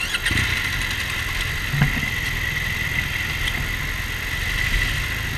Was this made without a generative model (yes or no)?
yes